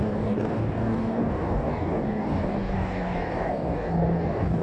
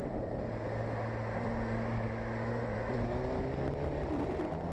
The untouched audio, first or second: second